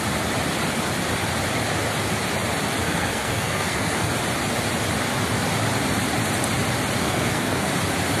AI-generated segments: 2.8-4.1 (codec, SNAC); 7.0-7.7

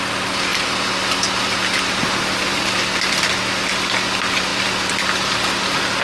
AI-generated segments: 2.5-3.1 (vocoder, BigVGAN v2); 4.5-5.3

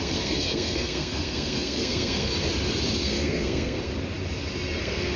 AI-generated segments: 0.0-2.3 (codec, SNAC); 3.0-3.9; 4.8-5.2